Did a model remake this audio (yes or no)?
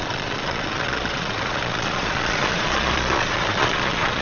yes